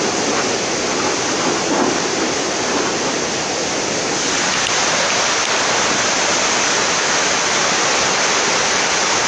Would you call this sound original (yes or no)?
yes